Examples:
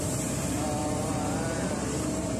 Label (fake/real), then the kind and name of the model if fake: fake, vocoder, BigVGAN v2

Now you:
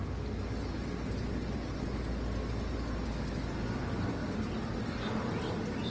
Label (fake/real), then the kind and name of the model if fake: real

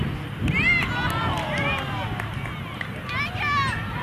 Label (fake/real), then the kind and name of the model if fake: real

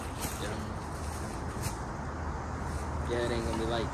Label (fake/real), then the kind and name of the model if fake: real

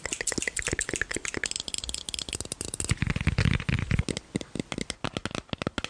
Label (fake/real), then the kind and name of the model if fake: real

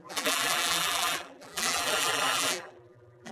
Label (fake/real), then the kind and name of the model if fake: fake, vocoder, BigVGAN v2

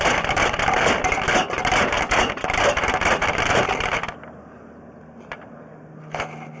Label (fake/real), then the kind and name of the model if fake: real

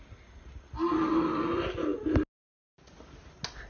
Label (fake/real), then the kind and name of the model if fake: real